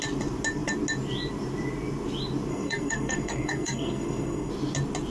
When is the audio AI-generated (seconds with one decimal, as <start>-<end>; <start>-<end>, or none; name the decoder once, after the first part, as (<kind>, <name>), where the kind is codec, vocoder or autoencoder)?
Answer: 2.5-4.5 (codec, SNAC)